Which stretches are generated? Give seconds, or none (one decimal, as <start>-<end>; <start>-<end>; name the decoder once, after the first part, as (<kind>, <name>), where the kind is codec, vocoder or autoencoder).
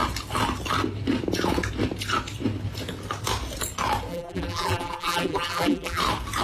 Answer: 4.1-6.0 (vocoder, BigVGAN v2)